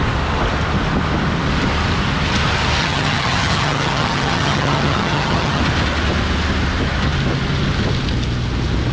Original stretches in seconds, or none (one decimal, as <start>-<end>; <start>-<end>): 0.0-2.8; 5.6-8.9